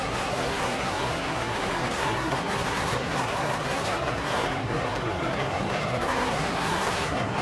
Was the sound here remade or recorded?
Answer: remade